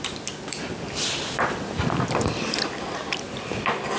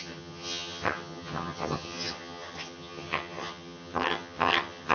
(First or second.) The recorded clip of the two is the first